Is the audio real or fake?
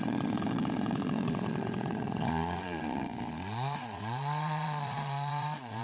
fake